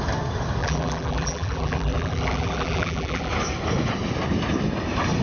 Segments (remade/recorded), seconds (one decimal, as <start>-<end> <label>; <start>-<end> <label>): 0.0-0.6 recorded; 0.6-3.3 remade; 3.3-5.2 recorded

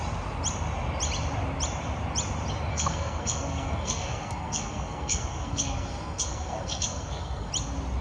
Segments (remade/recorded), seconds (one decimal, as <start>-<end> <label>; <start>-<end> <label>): 0.0-2.7 recorded; 2.7-7.5 remade; 7.5-8.0 recorded

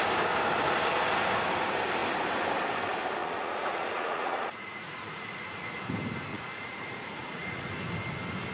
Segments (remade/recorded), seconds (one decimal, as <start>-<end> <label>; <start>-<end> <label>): 0.0-3.2 recorded; 3.2-5.8 remade; 5.8-6.3 recorded; 6.3-7.7 remade; 7.7-8.5 recorded

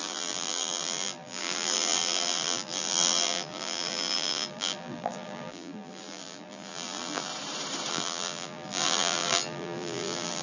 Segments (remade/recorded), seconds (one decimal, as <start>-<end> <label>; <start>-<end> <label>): 0.0-7.3 remade; 7.3-7.9 recorded; 7.9-10.4 remade

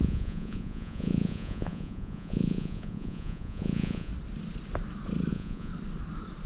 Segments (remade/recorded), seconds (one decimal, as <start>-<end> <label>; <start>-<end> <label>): 0.0-4.1 remade; 4.1-5.3 recorded; 5.3-5.7 remade; 5.7-6.5 recorded

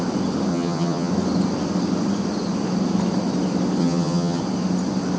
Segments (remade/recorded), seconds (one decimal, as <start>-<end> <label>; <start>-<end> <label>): 0.0-0.5 recorded; 0.5-1.1 remade; 1.1-3.8 recorded; 3.8-4.4 remade; 4.4-5.2 recorded

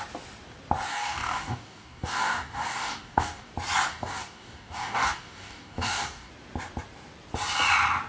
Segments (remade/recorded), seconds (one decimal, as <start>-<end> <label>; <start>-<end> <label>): 0.0-0.9 recorded; 0.9-3.5 remade; 3.5-3.9 recorded; 3.9-6.3 remade; 6.3-8.1 recorded

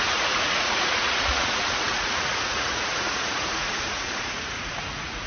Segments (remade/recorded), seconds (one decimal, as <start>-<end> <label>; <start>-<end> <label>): 0.0-5.3 remade